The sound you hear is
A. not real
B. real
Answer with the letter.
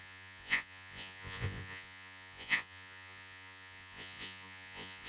A